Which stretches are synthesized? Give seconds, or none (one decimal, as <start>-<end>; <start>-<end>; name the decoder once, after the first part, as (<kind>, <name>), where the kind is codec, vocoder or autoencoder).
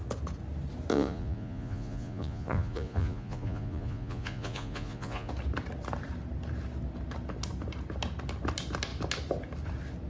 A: 0.9-5.3 (vocoder, Vocos)